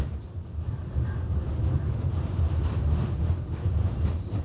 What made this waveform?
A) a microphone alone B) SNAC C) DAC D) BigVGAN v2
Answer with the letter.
D